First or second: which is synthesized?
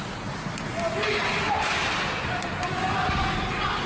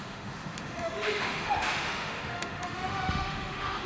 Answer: second